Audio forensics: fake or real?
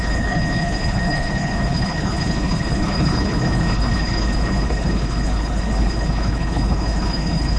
fake